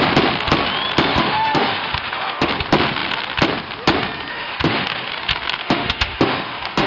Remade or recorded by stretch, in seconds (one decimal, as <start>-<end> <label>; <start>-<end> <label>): 0.0-1.1 recorded; 1.1-2.5 remade; 2.5-4.3 recorded; 4.3-5.1 remade; 5.1-5.6 recorded; 5.6-6.9 remade